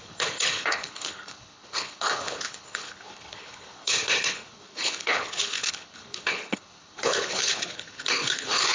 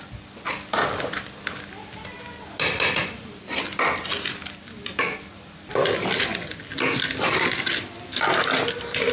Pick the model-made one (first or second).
first